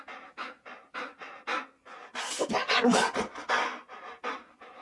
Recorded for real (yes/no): yes